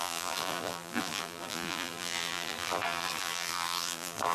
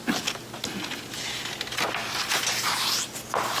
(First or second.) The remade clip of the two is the first